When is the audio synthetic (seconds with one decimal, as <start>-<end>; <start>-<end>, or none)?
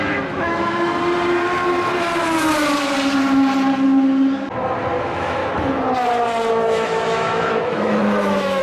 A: 0.0-0.9; 5.0-5.4; 6.5-8.6